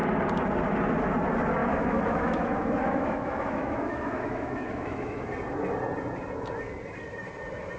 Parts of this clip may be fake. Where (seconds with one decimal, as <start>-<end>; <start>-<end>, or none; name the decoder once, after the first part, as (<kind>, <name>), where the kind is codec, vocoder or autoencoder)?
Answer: 1.6-5.3 (autoencoder, DAC-VAE)